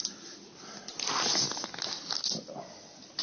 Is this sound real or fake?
real